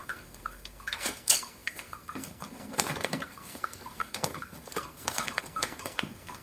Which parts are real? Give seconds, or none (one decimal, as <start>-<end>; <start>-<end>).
none

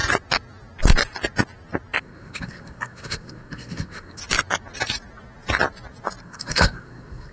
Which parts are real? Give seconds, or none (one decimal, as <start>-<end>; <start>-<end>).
0.0-2.0; 4.2-6.2

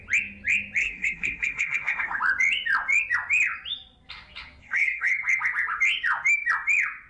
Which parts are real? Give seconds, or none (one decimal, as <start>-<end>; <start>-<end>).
0.0-0.8; 2.2-4.6; 5.1-7.1

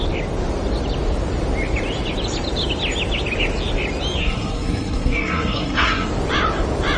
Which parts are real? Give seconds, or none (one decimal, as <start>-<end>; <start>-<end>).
0.0-4.2; 6.1-7.0

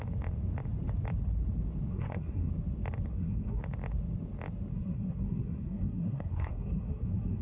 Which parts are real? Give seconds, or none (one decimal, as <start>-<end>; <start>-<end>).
0.0-1.9; 2.5-3.1; 3.6-4.7

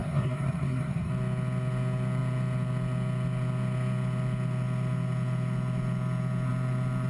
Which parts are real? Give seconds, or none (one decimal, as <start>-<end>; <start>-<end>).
1.1-7.1

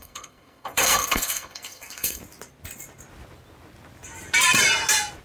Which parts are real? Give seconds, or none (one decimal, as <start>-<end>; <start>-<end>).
2.2-5.2